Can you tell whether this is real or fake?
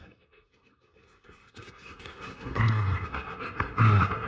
fake